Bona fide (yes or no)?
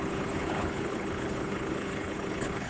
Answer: no